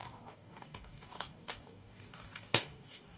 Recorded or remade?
remade